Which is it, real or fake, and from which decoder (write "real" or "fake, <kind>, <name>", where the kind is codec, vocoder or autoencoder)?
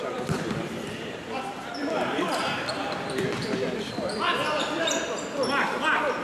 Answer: fake, vocoder, BigVGAN v2